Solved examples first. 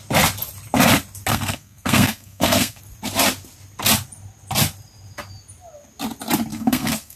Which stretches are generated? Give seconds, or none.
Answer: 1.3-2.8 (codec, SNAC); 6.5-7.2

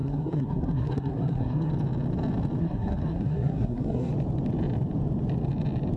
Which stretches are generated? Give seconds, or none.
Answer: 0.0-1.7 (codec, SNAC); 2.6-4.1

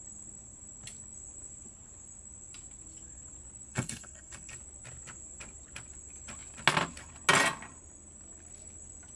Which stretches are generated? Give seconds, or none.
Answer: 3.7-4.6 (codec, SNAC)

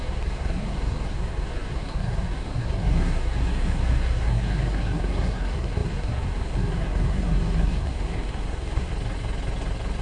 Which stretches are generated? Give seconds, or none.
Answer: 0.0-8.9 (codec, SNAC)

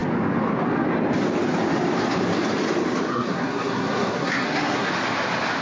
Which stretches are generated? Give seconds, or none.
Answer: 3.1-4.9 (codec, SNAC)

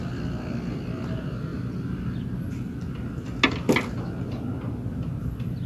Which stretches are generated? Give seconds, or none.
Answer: none